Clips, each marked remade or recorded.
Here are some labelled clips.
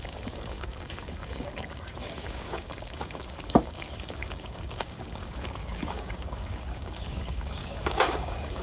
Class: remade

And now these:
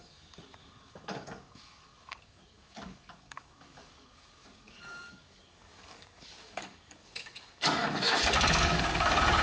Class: remade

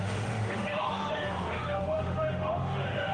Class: remade